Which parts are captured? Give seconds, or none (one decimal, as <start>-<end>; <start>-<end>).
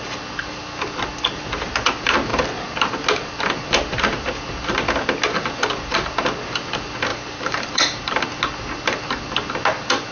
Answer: 0.0-7.1; 8.0-10.1